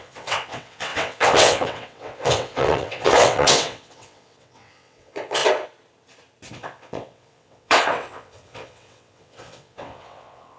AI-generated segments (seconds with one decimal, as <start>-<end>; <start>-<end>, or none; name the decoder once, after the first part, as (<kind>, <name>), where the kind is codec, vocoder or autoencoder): 0.0-5.4 (vocoder, WaveNeXt); 6.5-10.6